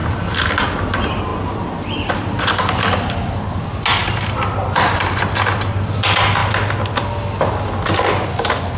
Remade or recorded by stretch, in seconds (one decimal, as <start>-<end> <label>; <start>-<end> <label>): 0.0-8.8 recorded